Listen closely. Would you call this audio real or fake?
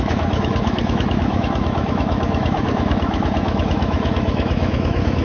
fake